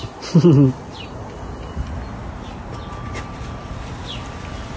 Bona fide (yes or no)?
yes